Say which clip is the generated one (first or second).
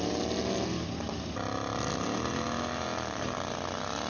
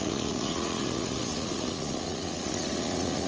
second